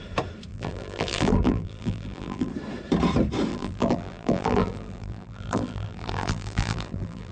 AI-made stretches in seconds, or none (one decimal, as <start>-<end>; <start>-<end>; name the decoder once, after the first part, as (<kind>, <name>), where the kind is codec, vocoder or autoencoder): 0.5-2.5 (vocoder, BigVGAN v2); 3.5-7.3

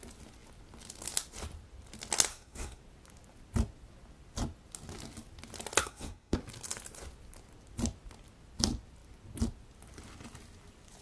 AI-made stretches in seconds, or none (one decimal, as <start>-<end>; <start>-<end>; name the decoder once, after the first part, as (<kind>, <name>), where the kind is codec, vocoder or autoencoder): 2.3-2.8 (codec, SNAC); 5.8-6.4

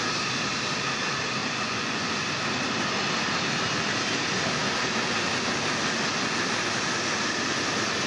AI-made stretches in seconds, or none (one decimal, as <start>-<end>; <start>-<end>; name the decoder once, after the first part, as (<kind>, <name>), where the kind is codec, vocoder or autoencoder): 1.4-2.1 (vocoder, Vocos)

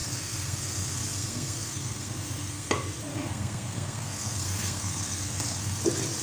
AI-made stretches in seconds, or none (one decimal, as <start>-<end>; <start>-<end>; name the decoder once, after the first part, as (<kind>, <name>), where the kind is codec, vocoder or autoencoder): 0.0-2.7 (codec, SNAC); 3.1-5.8

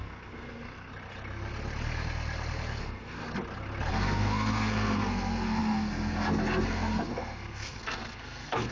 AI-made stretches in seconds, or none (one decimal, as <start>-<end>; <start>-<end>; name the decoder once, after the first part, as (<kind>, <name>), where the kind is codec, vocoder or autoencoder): 0.0-0.9 (codec, SNAC); 2.8-3.2; 3.9-8.7

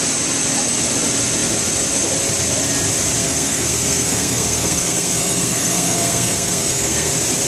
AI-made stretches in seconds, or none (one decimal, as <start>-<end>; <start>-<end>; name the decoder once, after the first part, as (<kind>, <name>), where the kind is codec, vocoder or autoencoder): 3.2-7.1 (codec, SNAC)